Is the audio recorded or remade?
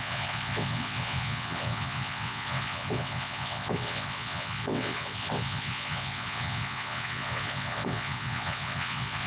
remade